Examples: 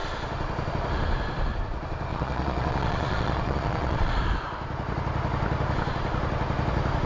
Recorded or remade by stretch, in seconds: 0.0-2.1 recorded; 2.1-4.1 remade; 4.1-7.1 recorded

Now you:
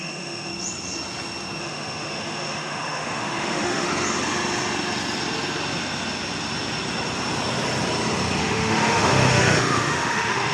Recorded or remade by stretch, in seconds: 0.0-0.5 remade; 0.5-1.6 recorded; 1.6-3.9 remade; 3.9-8.4 recorded; 8.4-10.5 remade